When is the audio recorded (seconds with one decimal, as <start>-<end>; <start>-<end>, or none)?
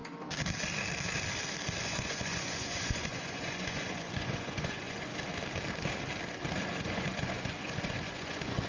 0.0-1.8; 5.1-6.8